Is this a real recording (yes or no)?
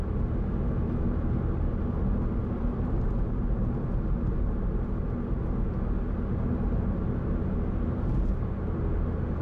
yes